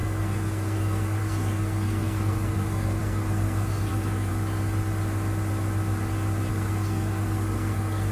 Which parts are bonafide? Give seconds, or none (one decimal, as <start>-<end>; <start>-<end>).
4.3-6.5